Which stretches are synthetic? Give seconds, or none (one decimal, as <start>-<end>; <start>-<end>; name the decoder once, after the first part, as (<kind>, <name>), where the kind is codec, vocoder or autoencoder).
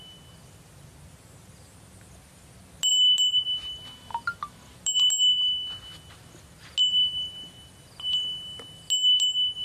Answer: none